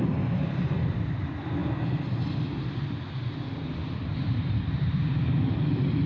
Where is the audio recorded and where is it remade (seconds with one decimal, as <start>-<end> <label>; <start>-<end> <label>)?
0.0-1.6 remade; 1.6-2.9 recorded; 2.9-6.1 remade